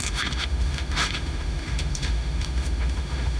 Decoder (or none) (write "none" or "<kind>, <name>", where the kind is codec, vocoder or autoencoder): autoencoder, DAC-VAE